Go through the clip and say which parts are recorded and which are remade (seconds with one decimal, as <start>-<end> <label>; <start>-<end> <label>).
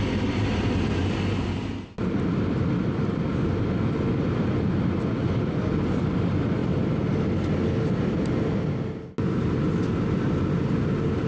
0.0-11.3 recorded